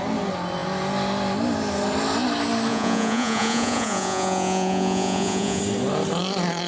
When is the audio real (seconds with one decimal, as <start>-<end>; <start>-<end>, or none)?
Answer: 0.0-2.7; 5.6-6.7